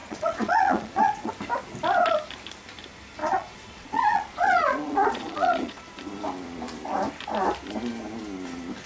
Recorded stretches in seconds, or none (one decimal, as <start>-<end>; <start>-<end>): 1.3-3.2; 5.8-8.9